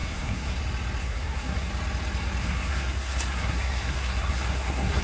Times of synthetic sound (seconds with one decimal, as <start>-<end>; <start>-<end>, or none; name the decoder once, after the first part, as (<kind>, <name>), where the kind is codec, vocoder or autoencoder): 0.0-0.6 (codec, SNAC); 1.0-1.7; 2.4-5.0